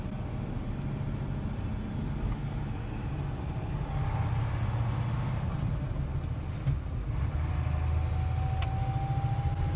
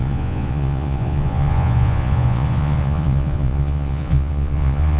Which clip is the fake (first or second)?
second